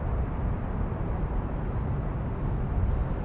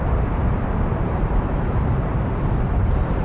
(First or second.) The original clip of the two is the first